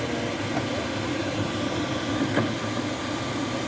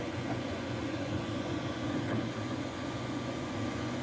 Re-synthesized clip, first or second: second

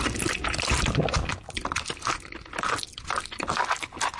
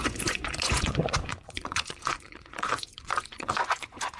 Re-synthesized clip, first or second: second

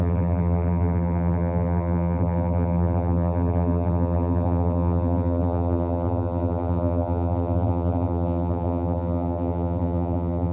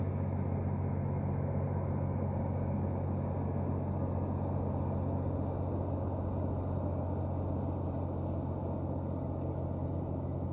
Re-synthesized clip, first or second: first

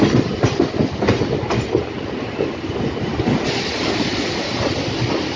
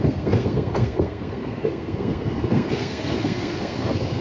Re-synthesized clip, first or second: second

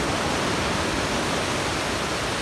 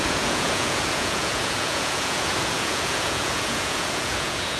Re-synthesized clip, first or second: second